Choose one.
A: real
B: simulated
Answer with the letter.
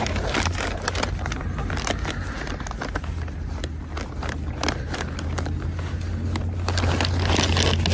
A